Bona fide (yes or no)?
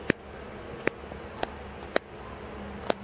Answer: yes